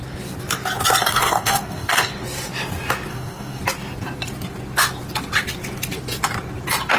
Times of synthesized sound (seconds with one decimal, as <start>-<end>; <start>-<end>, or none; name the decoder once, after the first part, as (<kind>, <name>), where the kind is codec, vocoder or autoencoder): 1.0-2.1 (codec, DAC); 3.1-3.6